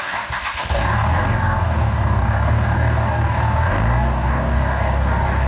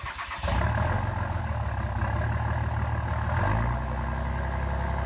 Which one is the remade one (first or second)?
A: first